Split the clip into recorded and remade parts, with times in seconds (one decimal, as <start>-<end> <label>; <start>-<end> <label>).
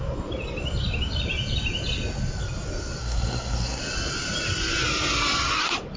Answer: 0.0-3.0 recorded; 3.0-3.8 remade; 3.8-6.0 recorded